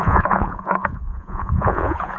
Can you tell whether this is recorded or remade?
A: remade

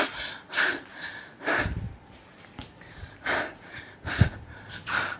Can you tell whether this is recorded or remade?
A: remade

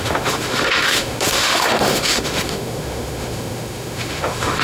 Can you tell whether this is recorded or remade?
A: remade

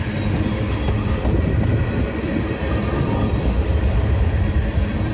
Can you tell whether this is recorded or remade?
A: remade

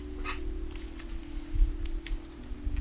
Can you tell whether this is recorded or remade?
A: recorded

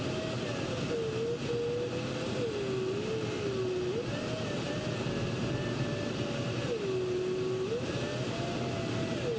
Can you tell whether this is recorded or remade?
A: recorded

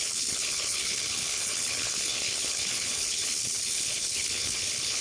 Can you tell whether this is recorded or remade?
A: remade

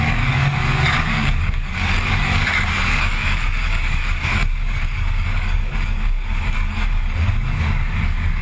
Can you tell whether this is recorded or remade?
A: remade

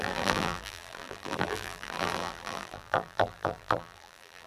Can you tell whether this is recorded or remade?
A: remade